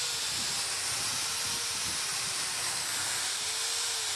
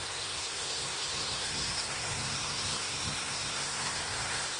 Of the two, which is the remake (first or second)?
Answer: second